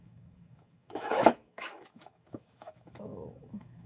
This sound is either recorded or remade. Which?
remade